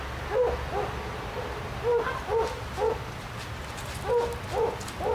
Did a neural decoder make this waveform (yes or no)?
no